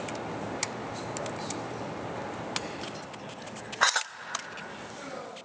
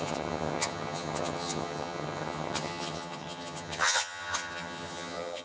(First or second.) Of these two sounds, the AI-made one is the second